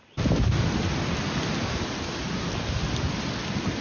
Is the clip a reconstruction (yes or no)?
no